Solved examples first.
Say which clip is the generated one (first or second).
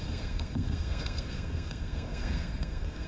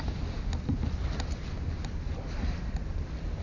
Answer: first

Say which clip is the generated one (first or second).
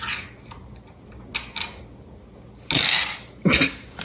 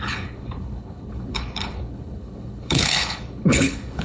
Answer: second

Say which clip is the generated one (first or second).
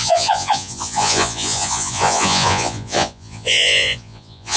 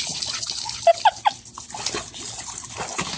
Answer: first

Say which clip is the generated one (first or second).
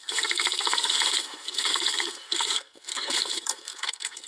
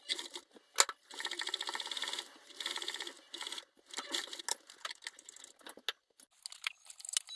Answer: first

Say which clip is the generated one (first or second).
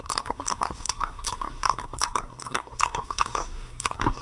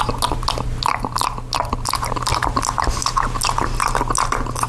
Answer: first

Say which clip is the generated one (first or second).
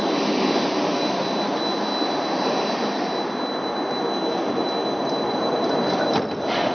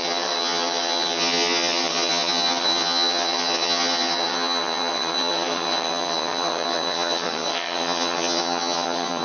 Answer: second